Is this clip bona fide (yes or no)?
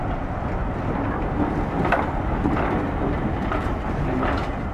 yes